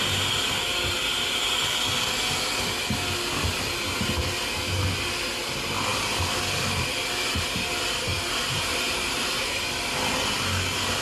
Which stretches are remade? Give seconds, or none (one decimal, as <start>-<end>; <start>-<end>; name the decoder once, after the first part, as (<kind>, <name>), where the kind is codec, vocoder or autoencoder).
8.1-9.6 (vocoder, BigVGAN v2)